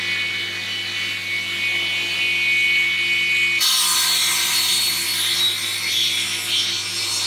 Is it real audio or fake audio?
real